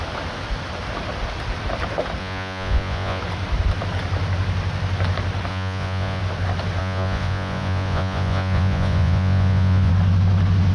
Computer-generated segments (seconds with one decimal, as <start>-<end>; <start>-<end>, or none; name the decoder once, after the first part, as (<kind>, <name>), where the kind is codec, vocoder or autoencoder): 2.2-3.2 (vocoder, Vocos); 5.5-6.2; 6.8-9.9